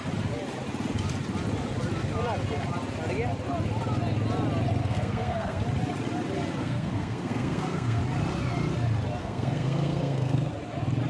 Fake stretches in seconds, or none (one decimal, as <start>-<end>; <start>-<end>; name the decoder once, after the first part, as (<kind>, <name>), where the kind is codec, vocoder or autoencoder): 4.8-5.6 (codec, SNAC); 6.6-8.0; 9.2-10.5